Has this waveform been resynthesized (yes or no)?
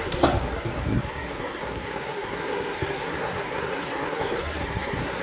yes